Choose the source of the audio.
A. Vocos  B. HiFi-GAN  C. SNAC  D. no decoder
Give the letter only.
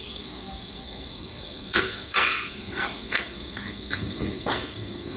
C